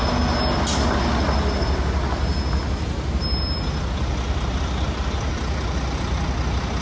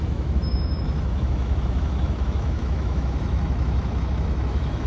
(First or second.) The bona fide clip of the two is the first